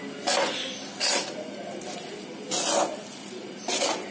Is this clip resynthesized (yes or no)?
no